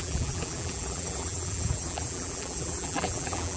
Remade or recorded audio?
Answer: remade